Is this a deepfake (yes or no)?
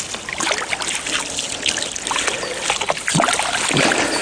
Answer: no